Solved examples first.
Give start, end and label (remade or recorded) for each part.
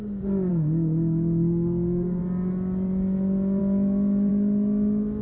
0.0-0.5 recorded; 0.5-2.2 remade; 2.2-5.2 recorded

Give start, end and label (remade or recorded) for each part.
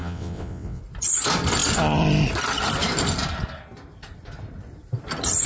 0.0-0.8 remade; 0.8-5.5 recorded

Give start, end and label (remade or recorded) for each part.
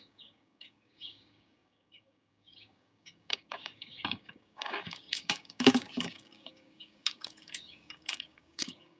0.0-9.0 remade